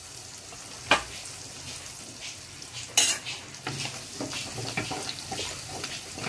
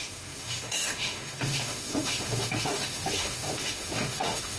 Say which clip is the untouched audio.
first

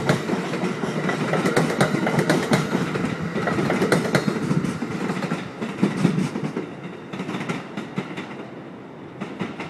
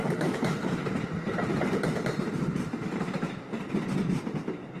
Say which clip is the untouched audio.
first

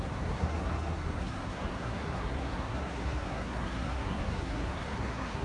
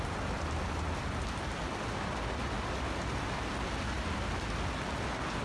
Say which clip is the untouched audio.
second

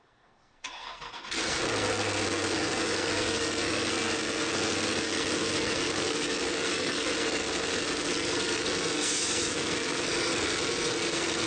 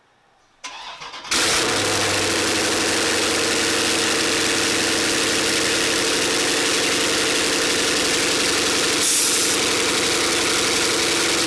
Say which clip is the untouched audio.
second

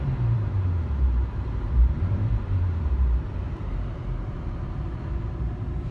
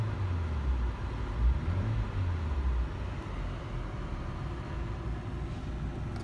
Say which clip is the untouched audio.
second